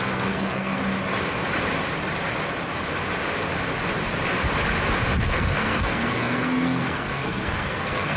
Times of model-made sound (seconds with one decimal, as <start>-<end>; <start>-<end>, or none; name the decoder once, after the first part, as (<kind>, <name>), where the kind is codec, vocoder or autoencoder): 0.0-0.8 (codec, SNAC); 5.2-8.2